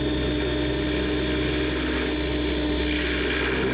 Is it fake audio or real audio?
real